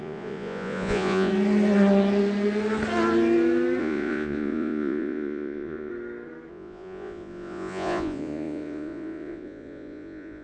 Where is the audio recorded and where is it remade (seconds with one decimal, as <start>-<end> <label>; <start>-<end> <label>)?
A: 0.0-1.3 remade; 1.3-3.8 recorded; 3.8-5.9 remade; 5.9-6.5 recorded; 6.5-10.4 remade